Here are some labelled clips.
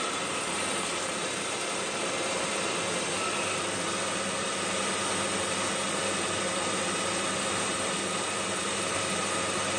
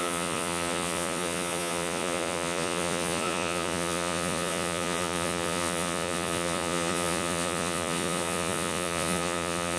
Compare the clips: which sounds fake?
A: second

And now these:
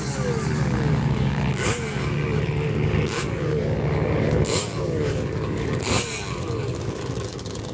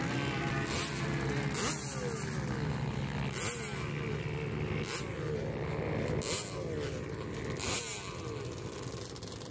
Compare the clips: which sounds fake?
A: first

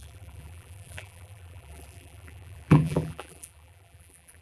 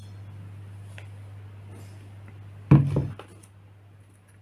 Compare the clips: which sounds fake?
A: first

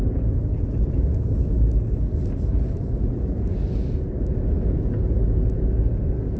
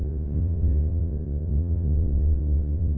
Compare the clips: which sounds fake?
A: second